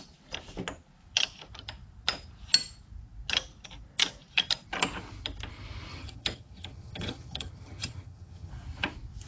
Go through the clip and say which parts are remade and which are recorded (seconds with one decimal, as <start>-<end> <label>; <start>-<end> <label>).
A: 0.0-5.9 recorded; 5.9-8.5 remade; 8.5-9.3 recorded